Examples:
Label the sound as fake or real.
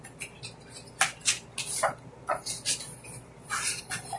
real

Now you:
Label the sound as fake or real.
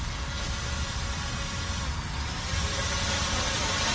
real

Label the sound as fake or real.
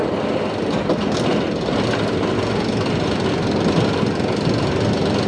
real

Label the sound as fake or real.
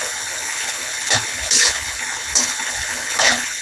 fake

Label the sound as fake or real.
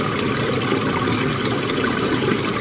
real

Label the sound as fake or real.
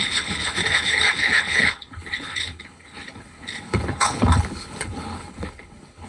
fake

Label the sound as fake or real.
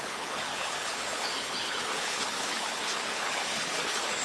fake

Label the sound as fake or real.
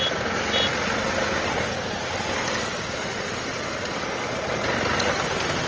real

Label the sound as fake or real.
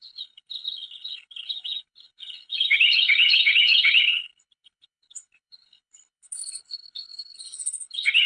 fake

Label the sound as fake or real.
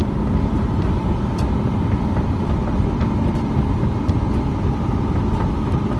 real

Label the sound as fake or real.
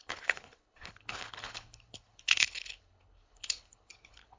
fake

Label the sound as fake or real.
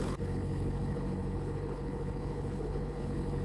fake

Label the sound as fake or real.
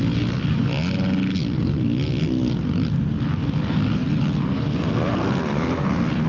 real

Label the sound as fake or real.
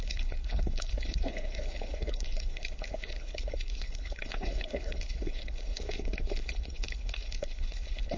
fake